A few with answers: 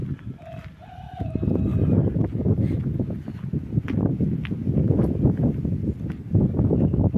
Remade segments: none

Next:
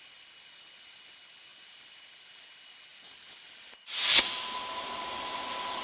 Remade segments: none